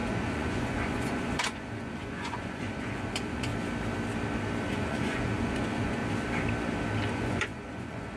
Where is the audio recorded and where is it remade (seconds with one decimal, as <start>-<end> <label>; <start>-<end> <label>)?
0.0-3.5 remade; 3.5-4.7 recorded; 4.7-6.0 remade; 6.0-7.1 recorded; 7.1-8.2 remade